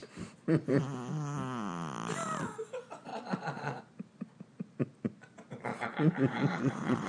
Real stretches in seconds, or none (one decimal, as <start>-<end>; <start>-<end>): 0.0-3.1; 3.8-5.7

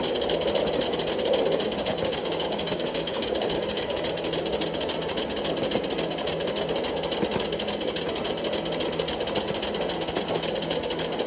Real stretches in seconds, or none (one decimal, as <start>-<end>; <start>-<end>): 0.0-2.2; 4.0-11.3

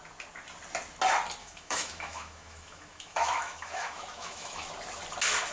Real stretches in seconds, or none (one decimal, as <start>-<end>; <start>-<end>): 0.0-1.4; 4.7-5.5

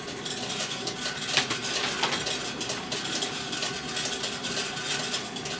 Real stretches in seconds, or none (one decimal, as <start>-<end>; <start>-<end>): 0.0-5.6